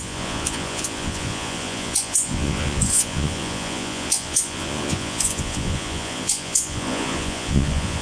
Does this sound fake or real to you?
fake